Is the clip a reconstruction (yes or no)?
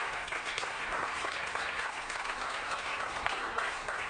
yes